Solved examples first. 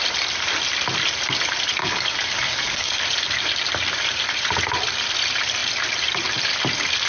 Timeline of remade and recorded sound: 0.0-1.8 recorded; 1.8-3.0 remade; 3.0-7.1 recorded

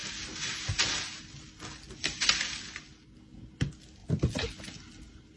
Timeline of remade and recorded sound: 0.0-5.4 recorded

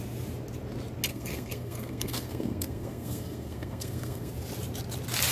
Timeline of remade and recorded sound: 0.0-1.1 recorded; 1.1-4.3 remade; 4.3-5.3 recorded

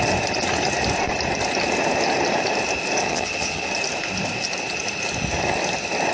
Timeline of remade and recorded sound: 0.0-3.0 recorded; 3.0-3.7 remade; 3.7-6.1 recorded